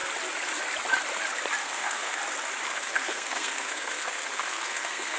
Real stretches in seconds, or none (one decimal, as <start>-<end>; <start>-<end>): 0.0-1.6; 2.2-2.7